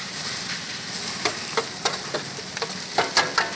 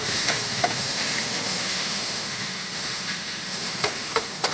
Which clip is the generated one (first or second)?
second